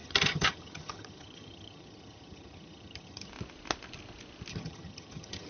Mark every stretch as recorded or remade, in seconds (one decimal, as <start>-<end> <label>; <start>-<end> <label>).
0.0-3.3 remade; 3.3-4.5 recorded; 4.5-5.5 remade